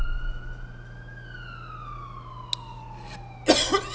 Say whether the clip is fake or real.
real